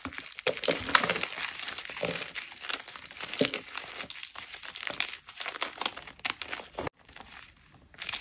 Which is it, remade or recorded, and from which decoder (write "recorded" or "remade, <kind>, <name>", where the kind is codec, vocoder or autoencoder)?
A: recorded